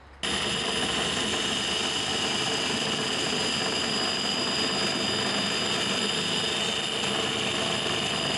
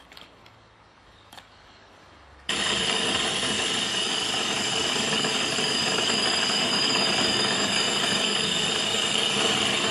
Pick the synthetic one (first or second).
second